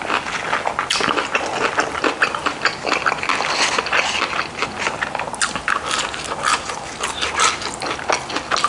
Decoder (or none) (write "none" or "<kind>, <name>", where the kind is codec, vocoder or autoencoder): none